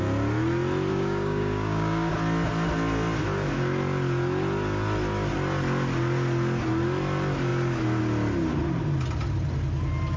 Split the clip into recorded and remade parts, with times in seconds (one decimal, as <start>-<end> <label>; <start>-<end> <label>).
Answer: 0.0-0.9 recorded; 0.9-2.1 remade; 2.1-10.2 recorded